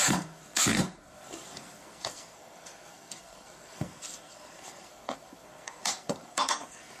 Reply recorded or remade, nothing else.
remade